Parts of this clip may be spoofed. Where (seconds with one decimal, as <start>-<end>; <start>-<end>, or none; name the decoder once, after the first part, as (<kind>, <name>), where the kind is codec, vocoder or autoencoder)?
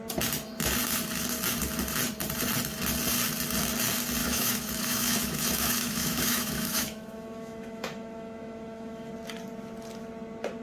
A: 4.2-9.1 (autoencoder, DAC-VAE)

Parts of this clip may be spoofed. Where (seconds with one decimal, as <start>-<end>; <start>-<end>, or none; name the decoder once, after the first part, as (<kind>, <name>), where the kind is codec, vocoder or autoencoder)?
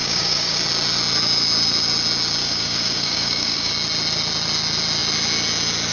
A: 0.0-0.6 (codec, DAC); 2.4-3.7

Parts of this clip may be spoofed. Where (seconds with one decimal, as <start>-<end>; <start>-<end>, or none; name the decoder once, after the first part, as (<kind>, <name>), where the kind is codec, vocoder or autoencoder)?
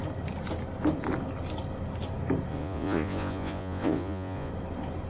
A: 2.5-4.5 (vocoder, Vocos)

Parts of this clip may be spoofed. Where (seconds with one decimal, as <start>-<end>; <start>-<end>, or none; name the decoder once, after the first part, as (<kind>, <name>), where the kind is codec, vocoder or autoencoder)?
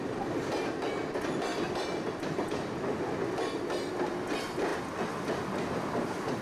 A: none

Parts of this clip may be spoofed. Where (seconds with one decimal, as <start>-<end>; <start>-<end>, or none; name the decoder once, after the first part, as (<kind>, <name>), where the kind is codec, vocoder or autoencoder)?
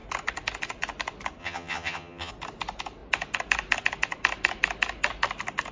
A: 1.4-2.3 (vocoder, HiFi-GAN)